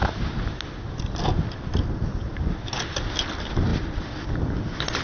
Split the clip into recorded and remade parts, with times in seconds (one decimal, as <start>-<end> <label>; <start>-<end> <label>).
0.0-5.0 recorded